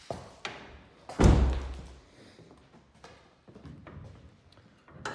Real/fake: real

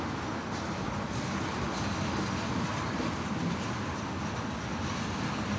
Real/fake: real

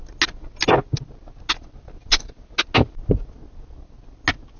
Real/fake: real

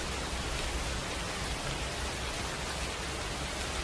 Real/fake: real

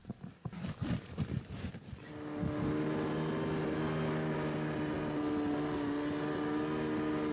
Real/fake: real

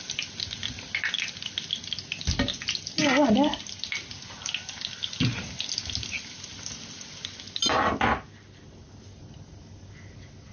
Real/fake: real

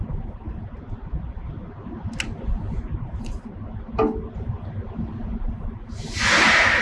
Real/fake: real